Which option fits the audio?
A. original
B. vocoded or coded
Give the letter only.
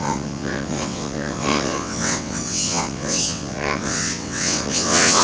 B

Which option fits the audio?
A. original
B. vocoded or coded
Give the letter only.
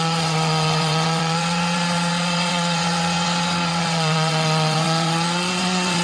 B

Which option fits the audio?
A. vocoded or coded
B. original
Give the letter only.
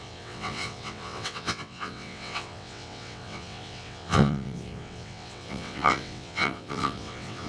A